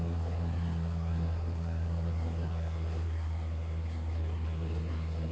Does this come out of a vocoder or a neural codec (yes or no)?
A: yes